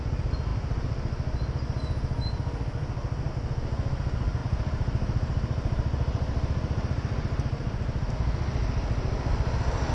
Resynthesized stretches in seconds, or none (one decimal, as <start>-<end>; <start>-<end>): 4.4-8.1